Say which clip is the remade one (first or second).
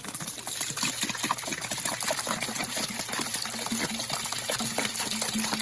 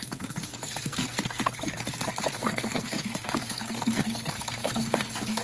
second